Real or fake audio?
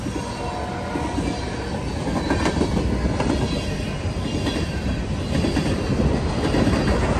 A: real